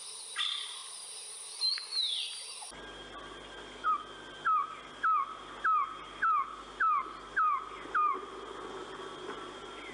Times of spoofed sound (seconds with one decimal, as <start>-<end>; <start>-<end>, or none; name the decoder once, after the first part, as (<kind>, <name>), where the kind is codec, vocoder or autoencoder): none